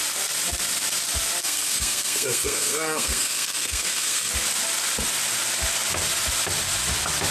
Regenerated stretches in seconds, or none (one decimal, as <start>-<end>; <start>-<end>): 1.4-4.3